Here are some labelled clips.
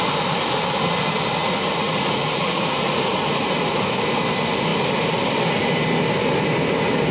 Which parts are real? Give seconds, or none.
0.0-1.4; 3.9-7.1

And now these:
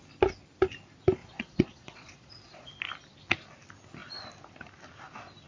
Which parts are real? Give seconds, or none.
0.0-1.2; 2.7-5.5